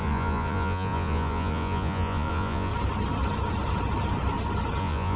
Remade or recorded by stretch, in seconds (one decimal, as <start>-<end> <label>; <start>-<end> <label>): 0.0-2.7 remade; 2.7-4.8 recorded; 4.8-5.2 remade